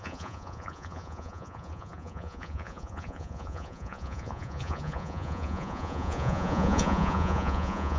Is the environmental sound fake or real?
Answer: fake